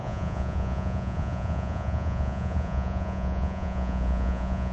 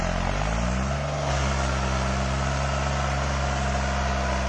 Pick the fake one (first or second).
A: first